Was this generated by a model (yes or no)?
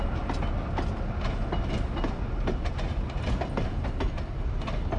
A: no